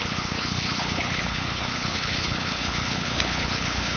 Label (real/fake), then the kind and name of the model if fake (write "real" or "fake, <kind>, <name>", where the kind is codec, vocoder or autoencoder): fake, codec, HILCodec